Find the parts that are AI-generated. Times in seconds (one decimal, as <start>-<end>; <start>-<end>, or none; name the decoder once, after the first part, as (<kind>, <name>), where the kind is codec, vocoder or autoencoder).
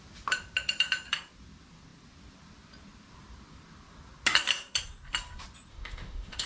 5.7-6.5 (autoencoder, DAC-VAE)